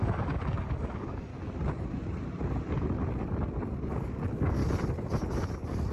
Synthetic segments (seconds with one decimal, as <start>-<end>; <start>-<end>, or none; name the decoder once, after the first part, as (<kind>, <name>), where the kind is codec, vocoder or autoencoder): 0.0-1.3 (codec, DAC); 3.9-4.6